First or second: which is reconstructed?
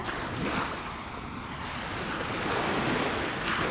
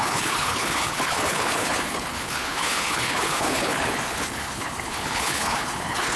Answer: second